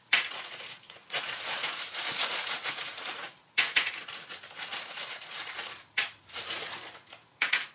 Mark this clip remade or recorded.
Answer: remade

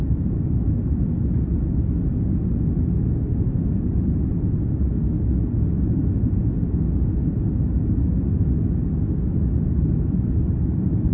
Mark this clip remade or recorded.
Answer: recorded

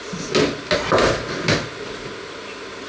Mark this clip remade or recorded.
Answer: recorded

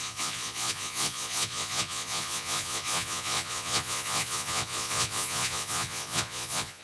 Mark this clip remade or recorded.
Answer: remade